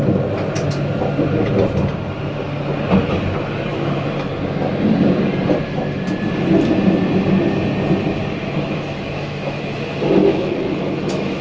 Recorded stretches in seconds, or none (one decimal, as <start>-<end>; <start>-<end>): 0.0-3.7; 4.3-8.4; 9.6-10.2